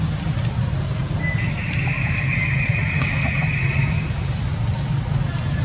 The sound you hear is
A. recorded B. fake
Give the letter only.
A